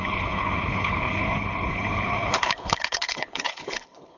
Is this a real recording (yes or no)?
no